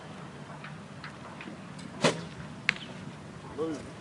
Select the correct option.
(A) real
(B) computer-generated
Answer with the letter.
A